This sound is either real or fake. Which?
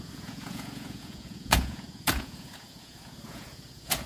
fake